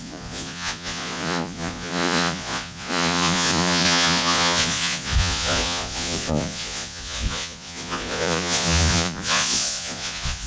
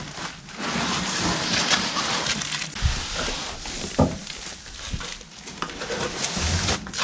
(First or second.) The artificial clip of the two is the first